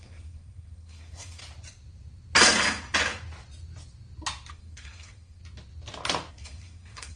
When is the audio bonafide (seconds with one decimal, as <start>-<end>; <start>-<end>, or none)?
1.4-4.5; 5.4-6.3